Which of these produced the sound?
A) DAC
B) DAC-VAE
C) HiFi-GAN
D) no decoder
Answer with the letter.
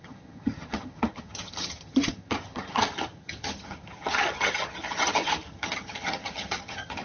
C